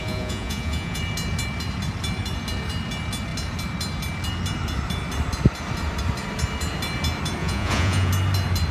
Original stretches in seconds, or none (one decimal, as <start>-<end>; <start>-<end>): 1.0-7.4; 8.1-8.7